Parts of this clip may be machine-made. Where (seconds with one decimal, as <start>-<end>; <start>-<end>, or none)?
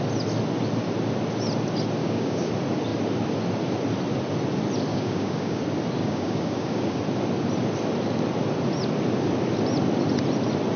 2.0-2.5; 4.9-5.6; 6.0-7.0